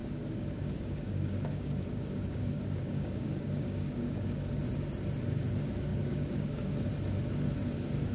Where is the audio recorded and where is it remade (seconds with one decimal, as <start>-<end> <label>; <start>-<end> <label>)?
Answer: 0.0-4.5 remade; 4.5-5.9 recorded; 5.9-6.9 remade; 6.9-8.1 recorded